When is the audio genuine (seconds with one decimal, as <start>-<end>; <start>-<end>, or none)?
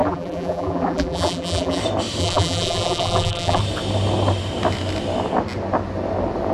1.8-2.2; 3.6-6.5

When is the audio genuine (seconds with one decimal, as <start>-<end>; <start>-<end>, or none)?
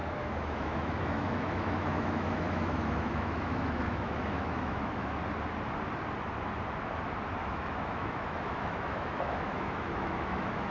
5.2-7.5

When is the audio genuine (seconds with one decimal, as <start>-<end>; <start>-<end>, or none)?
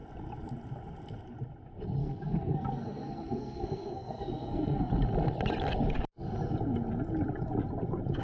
0.0-2.0; 4.9-8.2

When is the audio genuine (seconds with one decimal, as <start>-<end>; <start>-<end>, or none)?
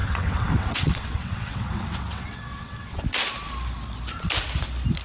3.0-5.0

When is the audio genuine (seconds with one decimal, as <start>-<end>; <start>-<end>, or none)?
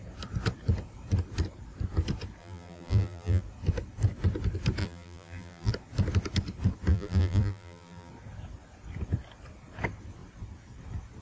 0.0-2.4; 3.4-4.8; 5.7-6.9; 8.1-11.2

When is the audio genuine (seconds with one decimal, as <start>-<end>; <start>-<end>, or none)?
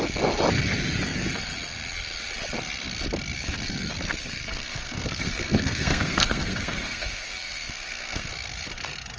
0.0-4.2; 8.3-9.2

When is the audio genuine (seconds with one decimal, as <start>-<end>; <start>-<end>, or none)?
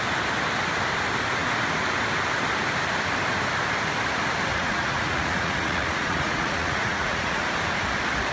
0.0-4.5; 7.5-8.3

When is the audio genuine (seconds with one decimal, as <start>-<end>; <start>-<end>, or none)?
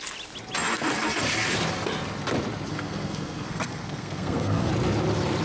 0.0-2.7; 4.7-5.4